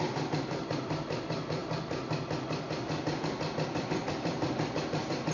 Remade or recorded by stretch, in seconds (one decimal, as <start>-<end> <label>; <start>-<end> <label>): 0.0-1.6 remade; 1.6-3.8 recorded; 3.8-5.3 remade